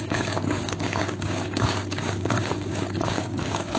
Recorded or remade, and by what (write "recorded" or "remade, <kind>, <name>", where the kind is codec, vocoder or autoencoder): remade, codec, DAC